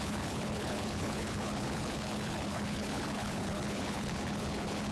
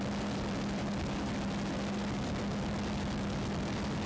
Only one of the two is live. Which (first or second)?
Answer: second